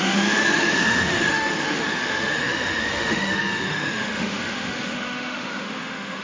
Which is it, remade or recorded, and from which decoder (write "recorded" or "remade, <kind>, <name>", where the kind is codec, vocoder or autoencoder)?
remade, autoencoder, DAC-VAE